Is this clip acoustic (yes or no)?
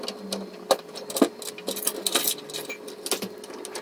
yes